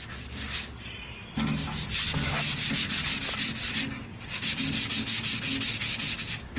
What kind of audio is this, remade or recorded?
recorded